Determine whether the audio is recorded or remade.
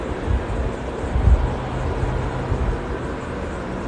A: recorded